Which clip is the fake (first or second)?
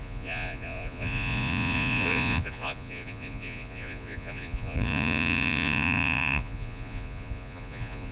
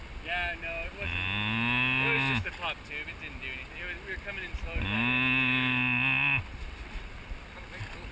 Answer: first